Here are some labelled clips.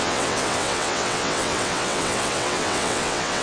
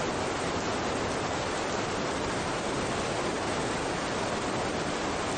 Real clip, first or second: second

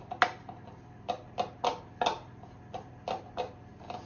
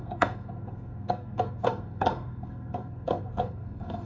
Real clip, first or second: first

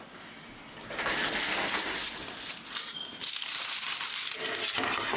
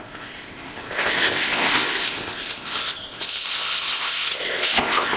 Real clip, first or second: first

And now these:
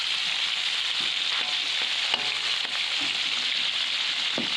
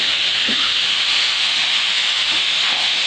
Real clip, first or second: first